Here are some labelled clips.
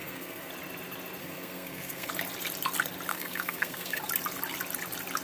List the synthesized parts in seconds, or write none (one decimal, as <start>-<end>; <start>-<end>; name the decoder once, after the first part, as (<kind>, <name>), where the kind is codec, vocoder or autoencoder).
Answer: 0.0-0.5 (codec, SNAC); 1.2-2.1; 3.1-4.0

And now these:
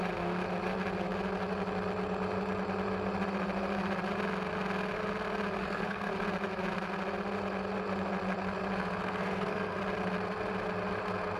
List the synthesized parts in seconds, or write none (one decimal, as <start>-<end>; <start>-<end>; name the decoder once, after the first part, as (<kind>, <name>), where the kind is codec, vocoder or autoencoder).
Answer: 5.6-6.1 (codec, SNAC); 9.0-9.8

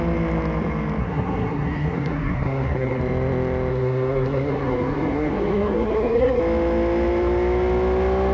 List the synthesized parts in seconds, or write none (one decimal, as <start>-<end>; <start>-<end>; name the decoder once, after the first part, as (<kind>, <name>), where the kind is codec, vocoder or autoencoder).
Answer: 1.0-3.0 (codec, SNAC); 3.7-6.4

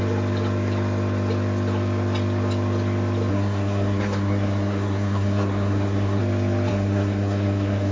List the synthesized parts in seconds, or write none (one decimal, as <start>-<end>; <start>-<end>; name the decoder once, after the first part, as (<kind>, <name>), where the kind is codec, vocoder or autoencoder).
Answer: 3.3-6.2 (codec, SNAC); 6.7-7.9